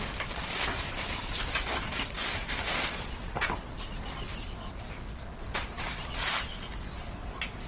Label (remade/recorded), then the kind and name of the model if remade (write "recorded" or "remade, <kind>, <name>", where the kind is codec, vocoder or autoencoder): recorded